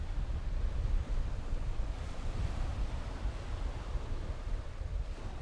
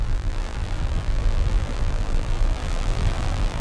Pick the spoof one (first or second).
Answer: second